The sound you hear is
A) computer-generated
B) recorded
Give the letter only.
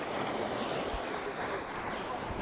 B